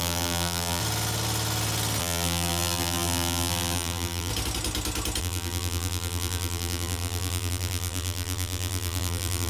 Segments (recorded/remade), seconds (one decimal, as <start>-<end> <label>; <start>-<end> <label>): 0.0-0.8 remade; 0.8-2.0 recorded; 2.0-4.3 remade; 4.3-5.2 recorded; 5.2-9.5 remade

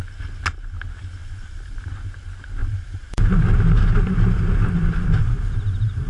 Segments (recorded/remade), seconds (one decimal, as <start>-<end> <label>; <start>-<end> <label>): 0.0-1.2 recorded; 1.2-1.8 remade; 1.8-2.6 recorded; 2.6-3.2 remade; 3.2-5.2 recorded; 5.2-6.1 remade

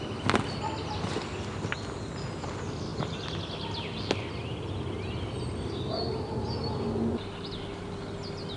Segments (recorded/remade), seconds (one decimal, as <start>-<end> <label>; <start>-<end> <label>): 0.0-8.6 recorded